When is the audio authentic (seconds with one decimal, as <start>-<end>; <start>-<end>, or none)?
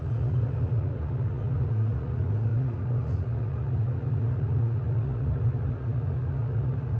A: none